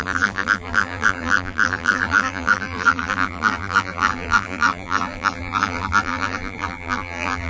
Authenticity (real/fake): fake